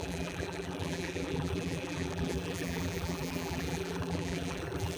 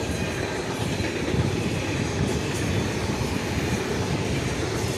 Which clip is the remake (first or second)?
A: first